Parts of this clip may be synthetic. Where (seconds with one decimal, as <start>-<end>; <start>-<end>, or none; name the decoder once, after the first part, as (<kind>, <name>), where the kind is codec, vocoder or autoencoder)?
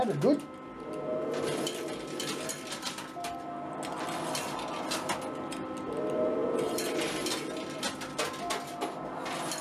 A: none